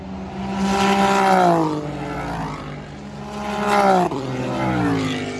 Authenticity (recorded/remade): recorded